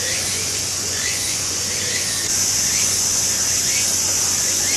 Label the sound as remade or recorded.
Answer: remade